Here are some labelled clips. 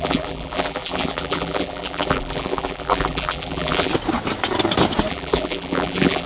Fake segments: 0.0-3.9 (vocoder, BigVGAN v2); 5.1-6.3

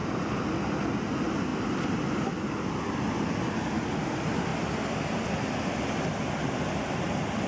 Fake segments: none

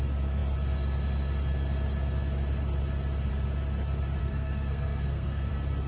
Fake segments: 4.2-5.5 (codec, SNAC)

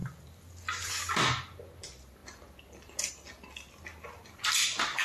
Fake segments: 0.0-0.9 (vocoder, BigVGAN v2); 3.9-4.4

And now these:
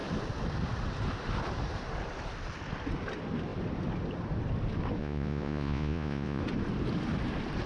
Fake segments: 5.0-6.4 (vocoder, Vocos)